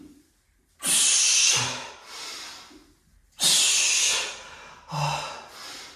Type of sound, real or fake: real